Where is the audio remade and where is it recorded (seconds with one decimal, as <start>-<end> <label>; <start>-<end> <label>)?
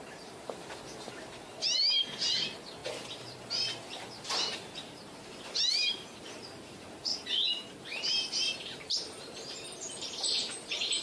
0.0-7.1 remade; 7.1-7.8 recorded; 7.8-11.0 remade